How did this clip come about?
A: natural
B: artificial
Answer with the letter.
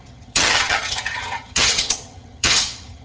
B